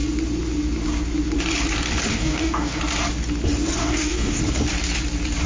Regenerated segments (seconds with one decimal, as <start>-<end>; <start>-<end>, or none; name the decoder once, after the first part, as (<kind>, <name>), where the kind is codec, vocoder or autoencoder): 2.1-2.8 (codec, DAC); 3.8-4.4